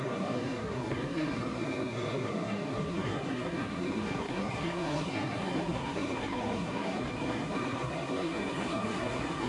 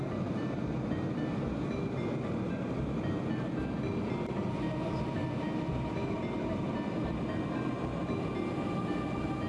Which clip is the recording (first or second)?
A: second